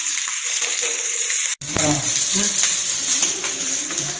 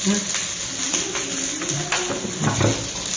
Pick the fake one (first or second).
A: first